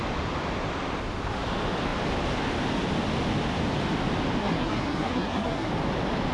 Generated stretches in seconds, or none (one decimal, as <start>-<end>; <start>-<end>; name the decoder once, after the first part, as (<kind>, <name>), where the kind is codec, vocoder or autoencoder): 4.4-5.7 (codec, SNAC)

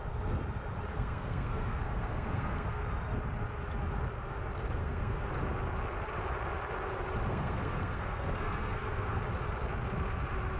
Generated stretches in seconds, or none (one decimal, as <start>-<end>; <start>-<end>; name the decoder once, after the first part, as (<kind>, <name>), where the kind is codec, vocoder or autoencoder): 0.9-2.8 (codec, SNAC); 4.8-5.3; 7.3-9.2

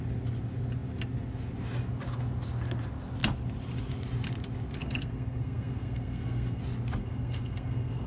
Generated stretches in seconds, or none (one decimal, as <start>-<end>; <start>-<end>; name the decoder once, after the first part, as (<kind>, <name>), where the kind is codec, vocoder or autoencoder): 4.8-6.6 (codec, SNAC); 7.0-8.1

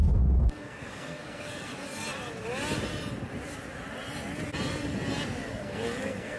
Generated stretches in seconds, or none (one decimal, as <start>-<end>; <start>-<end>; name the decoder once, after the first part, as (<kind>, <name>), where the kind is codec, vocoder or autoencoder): 0.0-1.7 (codec, SNAC); 5.5-6.4

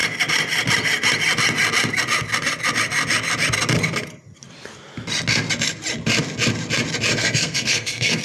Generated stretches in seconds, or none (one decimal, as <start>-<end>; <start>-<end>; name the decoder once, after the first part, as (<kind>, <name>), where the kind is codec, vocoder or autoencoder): 7.1-8.2 (codec, SNAC)